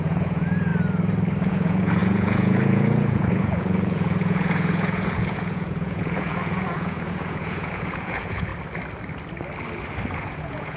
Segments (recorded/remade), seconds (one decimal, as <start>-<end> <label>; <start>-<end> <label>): 0.0-0.7 remade; 0.7-1.5 recorded; 1.5-8.5 remade; 8.5-10.1 recorded; 10.1-10.8 remade